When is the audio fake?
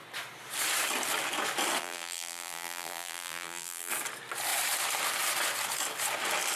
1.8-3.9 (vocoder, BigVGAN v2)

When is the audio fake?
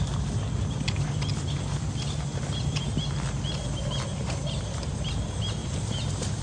4.1-5.1 (vocoder, BigVGAN v2); 5.6-6.4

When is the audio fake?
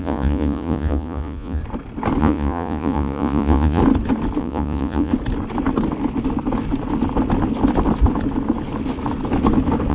0.0-1.6 (vocoder, Vocos); 2.2-3.8; 4.4-5.1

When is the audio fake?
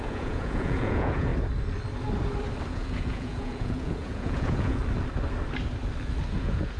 0.0-1.3 (vocoder, Vocos); 2.7-4.8; 6.3-6.8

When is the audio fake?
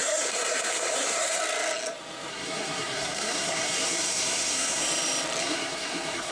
0.0-1.4 (codec, SNAC); 2.3-4.8; 5.4-6.3